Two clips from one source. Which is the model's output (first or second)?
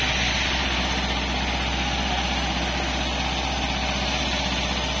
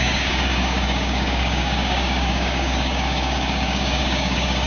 second